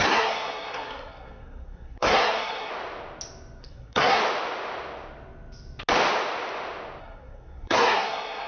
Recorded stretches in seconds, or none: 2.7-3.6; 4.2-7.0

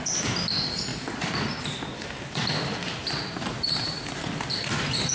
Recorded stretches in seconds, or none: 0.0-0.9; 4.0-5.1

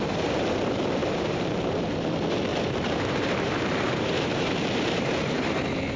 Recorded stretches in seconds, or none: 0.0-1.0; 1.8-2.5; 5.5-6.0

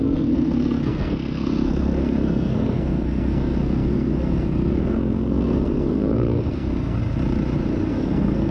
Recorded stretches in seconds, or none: 7.0-7.9

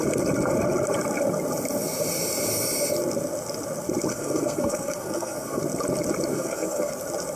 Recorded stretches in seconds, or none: 0.0-4.1; 5.6-6.3; 6.9-7.4

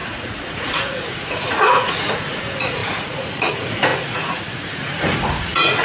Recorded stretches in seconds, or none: none

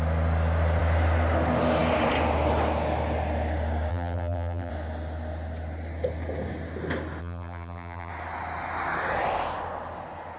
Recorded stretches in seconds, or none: 0.0-3.9; 4.7-7.2; 8.1-10.4

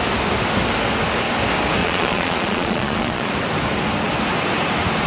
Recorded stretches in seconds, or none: 0.0-1.8; 3.3-5.1